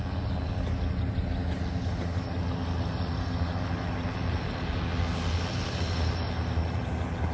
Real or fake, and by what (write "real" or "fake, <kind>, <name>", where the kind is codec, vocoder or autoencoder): real